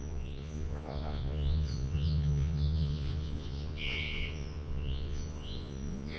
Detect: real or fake fake